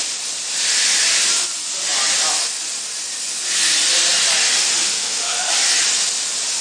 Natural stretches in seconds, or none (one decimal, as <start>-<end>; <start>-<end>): 0.0-4.8; 5.5-6.6